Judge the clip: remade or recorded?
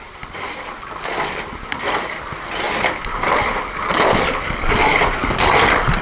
recorded